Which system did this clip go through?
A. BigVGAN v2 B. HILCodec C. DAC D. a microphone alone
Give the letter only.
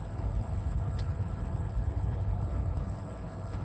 B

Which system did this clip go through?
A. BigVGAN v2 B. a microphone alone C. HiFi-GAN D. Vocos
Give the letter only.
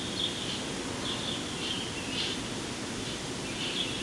B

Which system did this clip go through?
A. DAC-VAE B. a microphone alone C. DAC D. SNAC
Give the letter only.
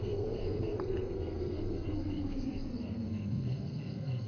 D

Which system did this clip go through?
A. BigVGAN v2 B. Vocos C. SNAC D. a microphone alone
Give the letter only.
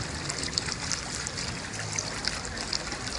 D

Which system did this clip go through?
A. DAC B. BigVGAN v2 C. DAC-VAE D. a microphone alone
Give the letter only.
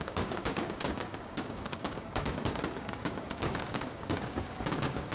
A